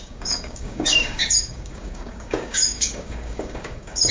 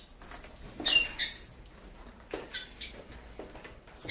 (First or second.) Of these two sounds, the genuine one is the second